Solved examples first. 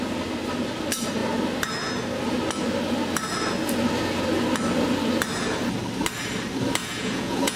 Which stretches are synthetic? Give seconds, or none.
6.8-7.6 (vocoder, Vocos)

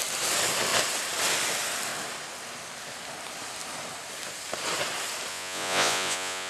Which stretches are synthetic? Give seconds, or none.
5.3-6.5 (vocoder, Vocos)

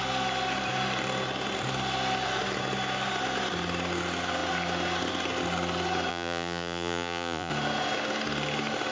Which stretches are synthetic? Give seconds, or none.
6.1-7.5 (vocoder, Vocos)